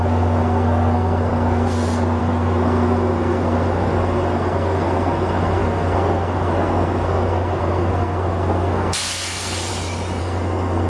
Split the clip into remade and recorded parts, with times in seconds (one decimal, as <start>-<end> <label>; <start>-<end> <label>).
0.0-9.7 remade; 9.7-10.2 recorded; 10.2-10.9 remade